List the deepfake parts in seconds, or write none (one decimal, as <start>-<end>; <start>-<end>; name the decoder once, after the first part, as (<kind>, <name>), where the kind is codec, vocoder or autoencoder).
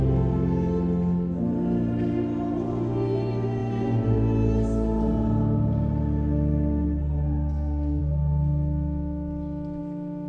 none